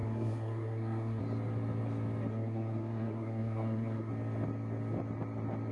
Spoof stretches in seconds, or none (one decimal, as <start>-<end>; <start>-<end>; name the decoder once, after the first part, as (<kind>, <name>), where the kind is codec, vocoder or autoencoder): 0.0-1.2 (codec, SNAC); 2.3-4.1